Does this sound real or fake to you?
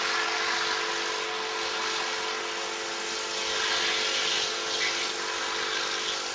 real